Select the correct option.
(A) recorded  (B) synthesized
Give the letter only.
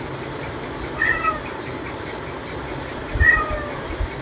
A